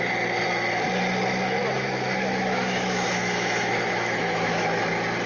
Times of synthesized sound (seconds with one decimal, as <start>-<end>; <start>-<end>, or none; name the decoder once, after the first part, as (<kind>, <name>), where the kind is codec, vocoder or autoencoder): 1.6-4.8 (autoencoder, DAC-VAE)